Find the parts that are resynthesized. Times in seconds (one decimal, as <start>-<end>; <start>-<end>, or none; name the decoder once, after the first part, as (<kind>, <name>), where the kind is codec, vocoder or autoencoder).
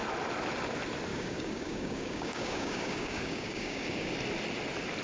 1.1-4.1 (codec, DAC)